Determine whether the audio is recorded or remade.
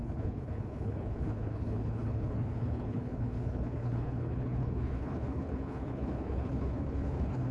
remade